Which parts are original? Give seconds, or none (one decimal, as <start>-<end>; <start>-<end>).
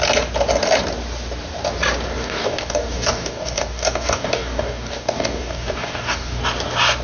0.0-2.2; 6.4-7.0